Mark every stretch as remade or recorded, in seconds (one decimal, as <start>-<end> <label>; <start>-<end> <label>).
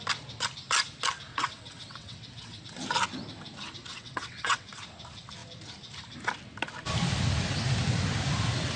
0.0-1.3 recorded; 1.3-2.6 remade; 2.6-3.9 recorded; 3.9-4.7 remade; 4.7-8.8 recorded